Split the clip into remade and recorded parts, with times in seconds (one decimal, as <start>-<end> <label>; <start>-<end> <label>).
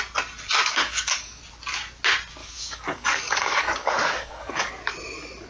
0.0-0.6 recorded; 0.6-1.4 remade; 1.4-2.4 recorded; 2.4-4.7 remade; 4.7-5.5 recorded